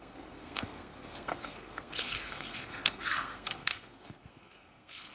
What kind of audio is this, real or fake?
fake